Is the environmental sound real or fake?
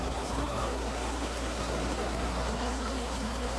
fake